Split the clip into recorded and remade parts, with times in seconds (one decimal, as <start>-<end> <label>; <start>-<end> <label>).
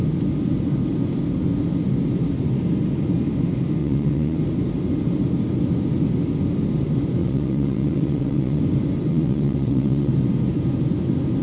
0.0-3.8 recorded; 3.8-4.4 remade; 4.4-7.2 recorded; 7.2-8.6 remade; 8.6-9.1 recorded; 9.1-10.1 remade; 10.1-11.4 recorded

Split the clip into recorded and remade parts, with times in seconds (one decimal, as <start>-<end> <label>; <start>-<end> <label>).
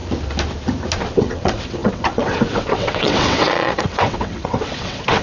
0.0-1.2 recorded; 1.2-5.2 remade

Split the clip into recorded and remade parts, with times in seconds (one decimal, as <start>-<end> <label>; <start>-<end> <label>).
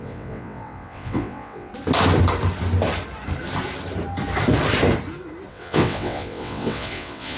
0.0-1.7 remade; 1.7-5.5 recorded; 5.5-7.4 remade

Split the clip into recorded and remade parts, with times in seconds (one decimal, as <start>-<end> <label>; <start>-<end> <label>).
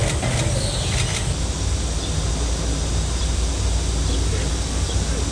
0.0-5.3 recorded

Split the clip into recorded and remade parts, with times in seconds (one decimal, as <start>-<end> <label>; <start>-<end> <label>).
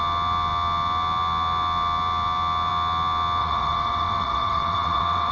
0.0-3.4 recorded; 3.4-5.3 remade